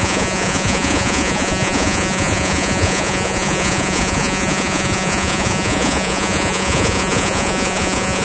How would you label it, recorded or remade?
remade